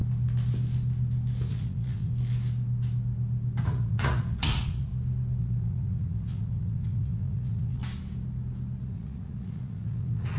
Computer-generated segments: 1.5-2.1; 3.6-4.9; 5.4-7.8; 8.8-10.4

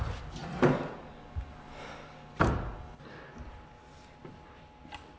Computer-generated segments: 0.0-0.4; 3.5-5.2

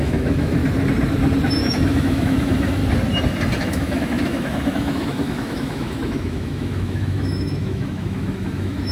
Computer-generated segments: 0.0-0.6; 1.6-2.8; 3.6-8.9